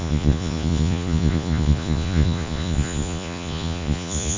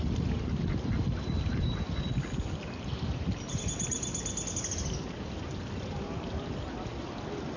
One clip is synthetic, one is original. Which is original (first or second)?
second